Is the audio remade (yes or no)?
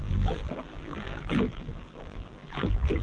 yes